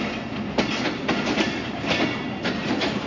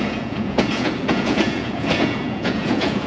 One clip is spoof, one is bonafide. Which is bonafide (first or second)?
first